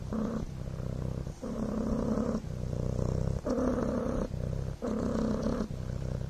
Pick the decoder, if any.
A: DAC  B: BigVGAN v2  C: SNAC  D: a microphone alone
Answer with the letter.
D